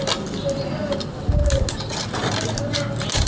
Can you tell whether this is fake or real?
real